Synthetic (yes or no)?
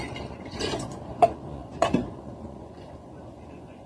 yes